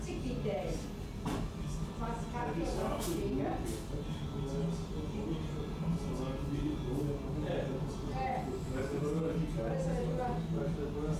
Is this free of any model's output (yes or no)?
yes